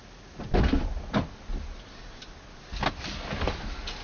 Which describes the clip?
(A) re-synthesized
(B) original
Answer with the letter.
B